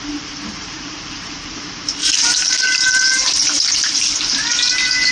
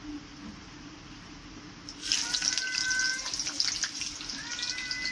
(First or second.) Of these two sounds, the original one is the second